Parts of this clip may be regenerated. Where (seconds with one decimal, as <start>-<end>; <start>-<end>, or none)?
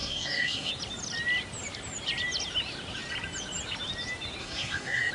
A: 0.0-0.7; 4.4-5.1